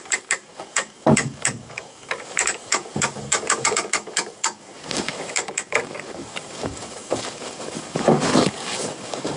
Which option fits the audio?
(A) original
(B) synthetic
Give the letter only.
B